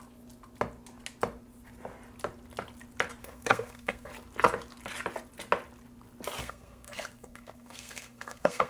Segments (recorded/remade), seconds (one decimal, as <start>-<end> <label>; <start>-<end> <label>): 0.0-3.2 recorded; 3.2-4.1 remade; 4.1-6.4 recorded; 6.4-8.7 remade